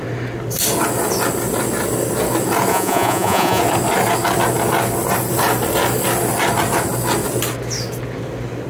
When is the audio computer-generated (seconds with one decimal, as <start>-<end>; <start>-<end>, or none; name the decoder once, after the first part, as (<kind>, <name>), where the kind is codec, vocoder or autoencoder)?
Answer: 2.7-3.6 (vocoder, Vocos)